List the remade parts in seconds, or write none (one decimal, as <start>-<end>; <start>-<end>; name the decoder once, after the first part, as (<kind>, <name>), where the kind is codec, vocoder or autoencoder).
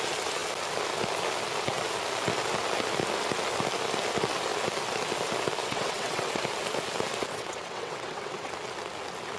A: 5.6-6.4 (vocoder, WaveNeXt); 7.1-8.5